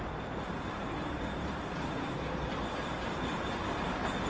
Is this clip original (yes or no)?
no